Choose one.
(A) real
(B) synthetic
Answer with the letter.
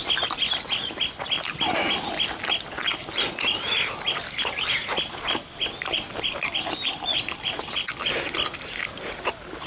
A